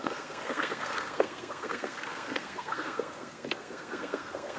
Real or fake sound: fake